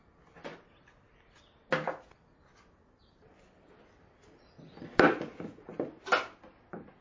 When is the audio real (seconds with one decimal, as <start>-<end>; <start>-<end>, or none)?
0.0-7.0